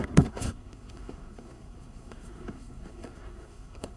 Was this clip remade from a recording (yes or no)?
yes